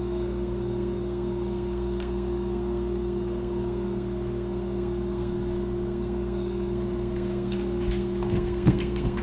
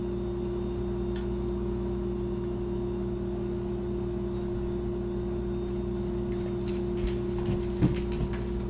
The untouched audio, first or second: second